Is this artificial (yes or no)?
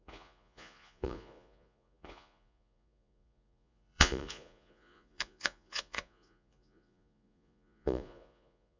yes